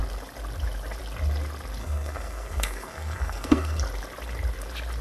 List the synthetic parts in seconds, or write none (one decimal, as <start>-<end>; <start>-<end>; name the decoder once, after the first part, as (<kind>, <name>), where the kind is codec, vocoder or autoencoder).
1.8-3.8 (codec, SNAC)